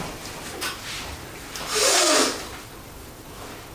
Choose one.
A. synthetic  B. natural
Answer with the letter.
B